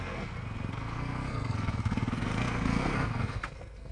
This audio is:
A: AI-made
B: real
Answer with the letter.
A